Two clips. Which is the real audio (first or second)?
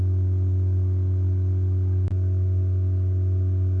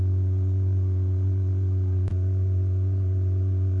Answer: first